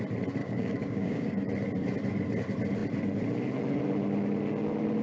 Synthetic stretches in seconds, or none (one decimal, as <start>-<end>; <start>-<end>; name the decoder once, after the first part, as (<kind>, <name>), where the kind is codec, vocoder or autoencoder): 0.4-1.5 (codec, DAC)